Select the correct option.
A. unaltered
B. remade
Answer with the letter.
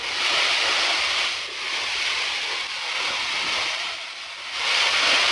A